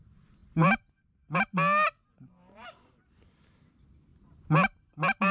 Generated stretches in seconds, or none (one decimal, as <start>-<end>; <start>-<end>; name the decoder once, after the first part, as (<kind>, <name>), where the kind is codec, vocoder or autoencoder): none